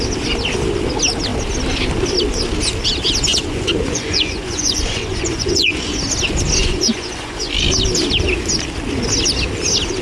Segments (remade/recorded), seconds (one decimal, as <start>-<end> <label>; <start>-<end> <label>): 0.0-3.3 recorded; 3.3-5.9 remade; 5.9-6.6 recorded; 6.6-7.5 remade; 7.5-10.0 recorded